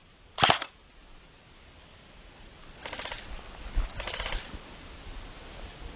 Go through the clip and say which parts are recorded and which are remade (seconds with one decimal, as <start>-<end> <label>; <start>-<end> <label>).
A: 0.0-6.0 recorded